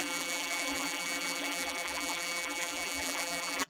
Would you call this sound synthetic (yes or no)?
yes